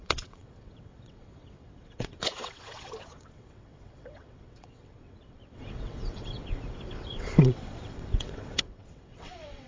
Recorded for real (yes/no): no